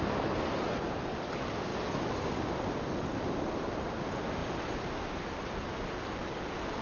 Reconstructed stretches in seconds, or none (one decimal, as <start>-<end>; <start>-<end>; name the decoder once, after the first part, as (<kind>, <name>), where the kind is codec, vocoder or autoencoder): none